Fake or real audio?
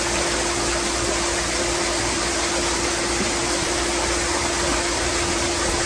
real